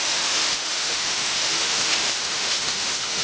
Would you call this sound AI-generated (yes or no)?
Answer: yes